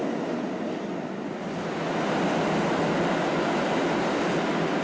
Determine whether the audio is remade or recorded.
recorded